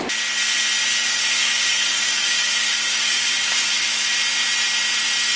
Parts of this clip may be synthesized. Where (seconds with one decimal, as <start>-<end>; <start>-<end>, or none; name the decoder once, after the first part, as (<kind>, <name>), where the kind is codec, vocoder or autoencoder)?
1.0-4.1 (codec, DAC)